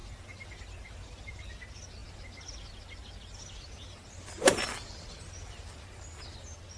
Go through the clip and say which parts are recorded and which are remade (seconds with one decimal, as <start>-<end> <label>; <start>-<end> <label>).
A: 0.0-6.8 recorded